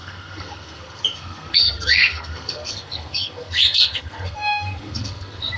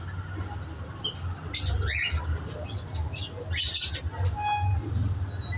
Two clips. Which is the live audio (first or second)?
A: second